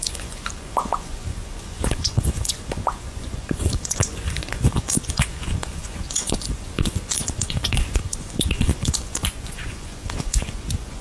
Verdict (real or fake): fake